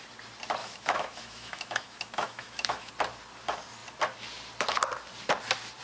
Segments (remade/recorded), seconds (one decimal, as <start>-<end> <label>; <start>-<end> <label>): 0.0-0.6 recorded; 0.6-2.9 remade; 2.9-5.8 recorded